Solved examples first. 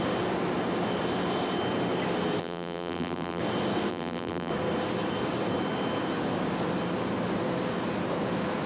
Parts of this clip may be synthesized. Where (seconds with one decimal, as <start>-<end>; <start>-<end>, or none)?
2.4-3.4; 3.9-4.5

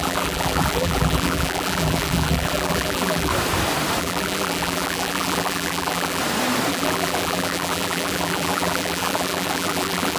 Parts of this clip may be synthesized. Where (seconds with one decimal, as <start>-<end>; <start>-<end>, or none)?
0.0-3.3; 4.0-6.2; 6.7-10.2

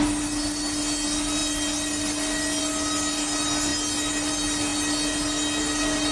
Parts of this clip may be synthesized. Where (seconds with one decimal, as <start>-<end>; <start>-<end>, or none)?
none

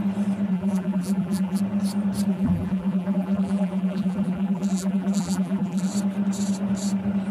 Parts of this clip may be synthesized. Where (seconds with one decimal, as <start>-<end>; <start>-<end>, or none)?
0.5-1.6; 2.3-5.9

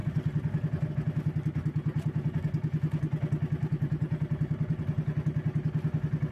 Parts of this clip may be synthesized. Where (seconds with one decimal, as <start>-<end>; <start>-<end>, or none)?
3.6-4.8

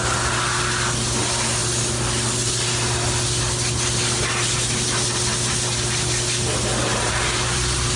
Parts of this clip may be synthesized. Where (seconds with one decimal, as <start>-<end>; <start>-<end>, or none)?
6.9-8.0